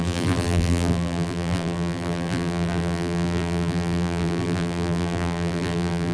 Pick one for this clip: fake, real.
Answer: fake